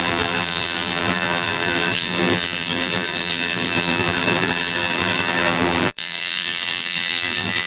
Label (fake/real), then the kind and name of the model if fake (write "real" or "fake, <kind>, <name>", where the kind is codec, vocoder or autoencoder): fake, vocoder, BigVGAN v2